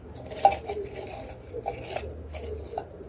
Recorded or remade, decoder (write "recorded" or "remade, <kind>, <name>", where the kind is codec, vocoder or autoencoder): recorded